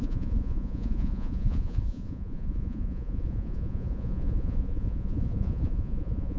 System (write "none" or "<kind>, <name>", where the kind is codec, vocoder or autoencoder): vocoder, Vocos